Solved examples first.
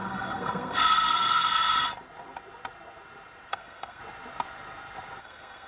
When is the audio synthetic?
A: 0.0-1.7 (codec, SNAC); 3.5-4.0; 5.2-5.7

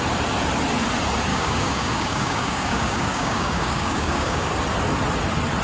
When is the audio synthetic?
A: 1.3-4.5 (codec, DAC)

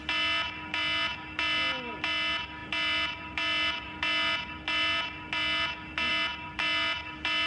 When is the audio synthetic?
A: none

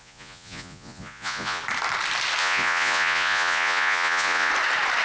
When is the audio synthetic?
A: 0.0-1.6 (vocoder, Vocos); 2.4-4.5

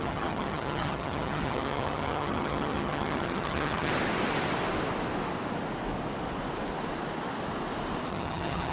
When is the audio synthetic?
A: 0.0-3.9 (vocoder, HiFi-GAN); 8.1-8.7

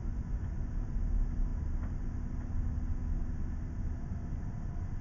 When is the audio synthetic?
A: 0.0-0.7 (vocoder, Vocos)